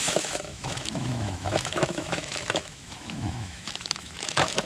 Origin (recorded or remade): remade